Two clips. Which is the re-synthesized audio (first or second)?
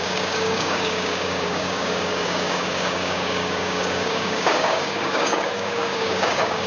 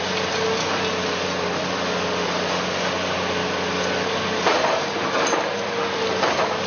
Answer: first